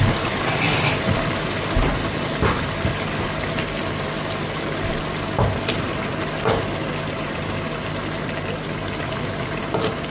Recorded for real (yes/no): yes